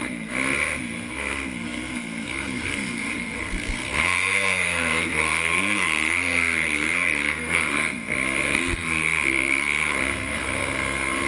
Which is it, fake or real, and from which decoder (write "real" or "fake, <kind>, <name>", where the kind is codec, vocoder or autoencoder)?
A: fake, codec, SNAC